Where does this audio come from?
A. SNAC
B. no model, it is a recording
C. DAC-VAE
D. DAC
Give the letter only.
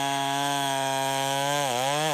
C